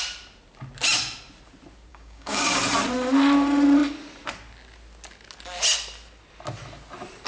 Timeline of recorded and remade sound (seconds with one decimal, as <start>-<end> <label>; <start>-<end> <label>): 0.0-1.9 recorded; 1.9-2.6 remade; 2.6-7.3 recorded